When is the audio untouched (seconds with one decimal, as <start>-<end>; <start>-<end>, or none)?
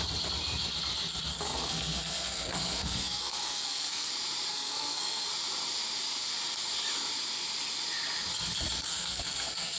0.0-1.3; 4.1-4.5; 5.3-8.9